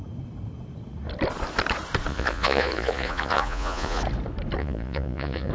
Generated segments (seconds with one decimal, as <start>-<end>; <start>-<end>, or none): 2.1-4.0; 4.6-5.5

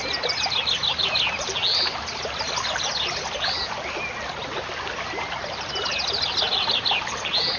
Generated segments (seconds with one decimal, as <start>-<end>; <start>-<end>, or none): none

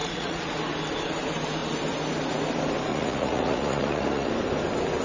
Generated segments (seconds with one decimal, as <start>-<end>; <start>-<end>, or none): 0.0-0.5; 2.9-4.3